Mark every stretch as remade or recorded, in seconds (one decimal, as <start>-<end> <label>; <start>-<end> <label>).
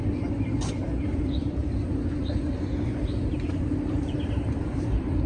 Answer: 0.0-1.6 remade; 1.6-3.6 recorded; 3.6-5.3 remade